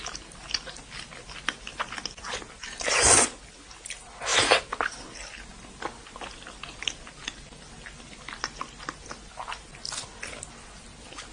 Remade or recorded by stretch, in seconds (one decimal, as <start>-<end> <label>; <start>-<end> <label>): 0.0-11.3 recorded